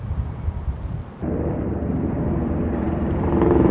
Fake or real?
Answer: fake